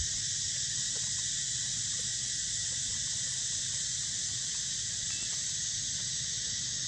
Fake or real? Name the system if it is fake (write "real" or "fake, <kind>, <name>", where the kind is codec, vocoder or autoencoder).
real